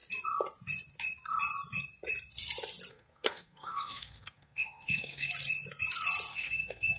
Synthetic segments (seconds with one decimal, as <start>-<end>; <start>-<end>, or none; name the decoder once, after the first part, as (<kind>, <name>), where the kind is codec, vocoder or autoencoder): 2.9-5.3 (codec, SNAC); 6.3-7.0